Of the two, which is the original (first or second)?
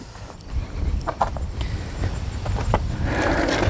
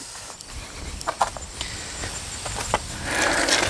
second